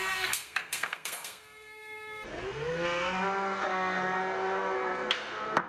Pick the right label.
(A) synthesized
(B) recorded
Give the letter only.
A